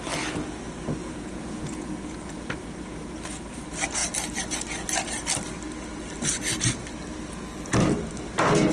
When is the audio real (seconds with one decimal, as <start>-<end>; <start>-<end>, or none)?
0.0-1.0; 2.5-8.7